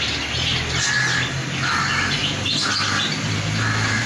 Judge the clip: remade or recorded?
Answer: recorded